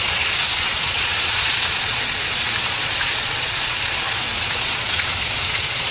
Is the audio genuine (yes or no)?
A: no